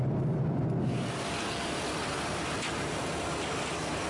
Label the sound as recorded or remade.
recorded